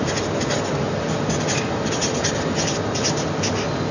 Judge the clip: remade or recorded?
recorded